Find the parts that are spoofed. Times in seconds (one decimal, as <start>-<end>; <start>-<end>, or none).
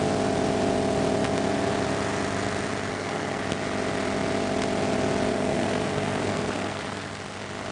2.9-3.4; 5.3-7.2